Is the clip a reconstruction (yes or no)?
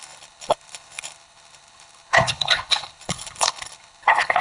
yes